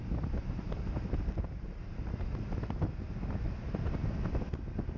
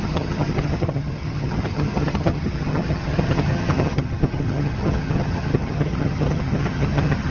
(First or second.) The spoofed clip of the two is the second